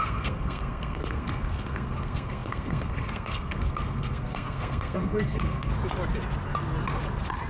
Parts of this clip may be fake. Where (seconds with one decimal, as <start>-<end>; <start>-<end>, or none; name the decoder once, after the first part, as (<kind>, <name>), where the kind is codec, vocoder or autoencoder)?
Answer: 0.0-5.7 (codec, SNAC)